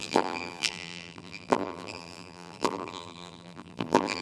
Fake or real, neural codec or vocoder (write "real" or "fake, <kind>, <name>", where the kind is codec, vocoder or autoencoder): fake, vocoder, BigVGAN v2